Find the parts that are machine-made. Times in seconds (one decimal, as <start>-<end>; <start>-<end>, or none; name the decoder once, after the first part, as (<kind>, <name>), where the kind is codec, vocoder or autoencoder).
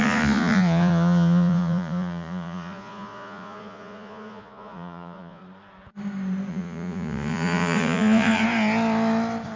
0.0-5.4 (vocoder, Vocos); 6.5-8.4